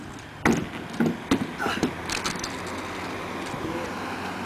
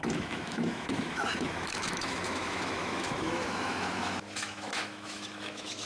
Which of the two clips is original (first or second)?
first